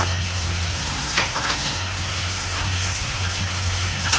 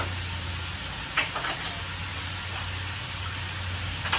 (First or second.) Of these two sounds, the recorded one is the second